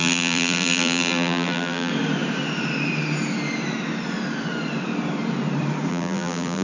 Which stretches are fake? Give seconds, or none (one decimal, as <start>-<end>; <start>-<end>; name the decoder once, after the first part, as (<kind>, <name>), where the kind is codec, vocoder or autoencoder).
0.0-1.9 (vocoder, BigVGAN v2); 5.9-6.6